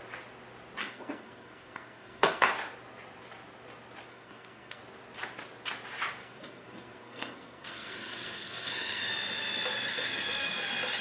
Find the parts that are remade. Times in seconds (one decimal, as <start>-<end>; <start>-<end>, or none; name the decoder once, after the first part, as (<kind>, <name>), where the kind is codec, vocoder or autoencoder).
0.8-2.5 (codec, SNAC); 4.1-4.8; 6.2-9.1; 9.9-10.6